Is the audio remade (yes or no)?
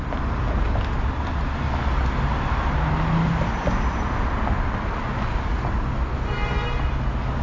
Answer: no